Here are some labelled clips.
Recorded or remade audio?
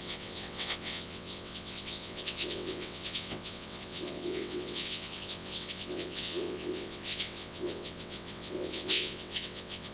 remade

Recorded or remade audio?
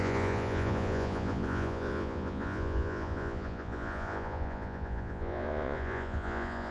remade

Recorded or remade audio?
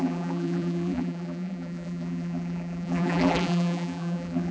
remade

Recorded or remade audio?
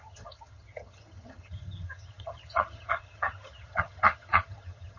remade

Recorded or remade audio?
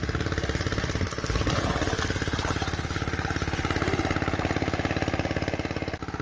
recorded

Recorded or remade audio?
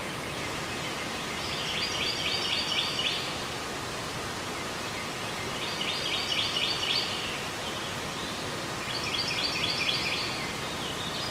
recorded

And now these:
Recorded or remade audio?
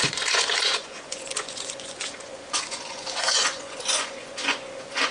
remade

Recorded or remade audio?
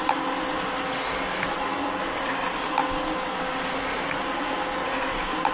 recorded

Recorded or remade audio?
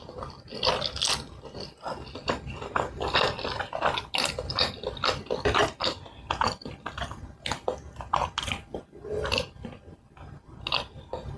recorded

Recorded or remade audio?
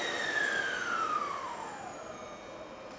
recorded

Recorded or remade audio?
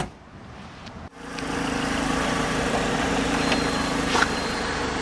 remade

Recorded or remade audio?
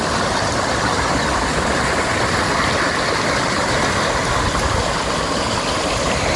recorded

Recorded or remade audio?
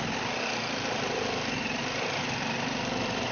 recorded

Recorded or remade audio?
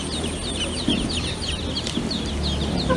recorded